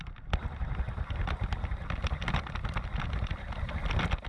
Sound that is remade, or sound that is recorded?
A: recorded